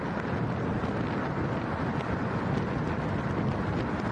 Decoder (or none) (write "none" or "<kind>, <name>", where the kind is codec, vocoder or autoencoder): none